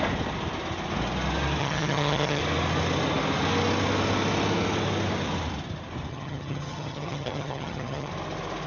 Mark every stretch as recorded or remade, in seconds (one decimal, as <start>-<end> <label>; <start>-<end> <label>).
0.0-1.6 recorded; 1.6-2.4 remade; 2.4-6.1 recorded; 6.1-8.1 remade; 8.1-8.7 recorded